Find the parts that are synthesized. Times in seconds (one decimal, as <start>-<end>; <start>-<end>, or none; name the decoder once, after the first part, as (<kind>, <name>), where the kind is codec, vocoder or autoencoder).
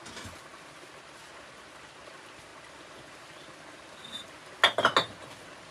none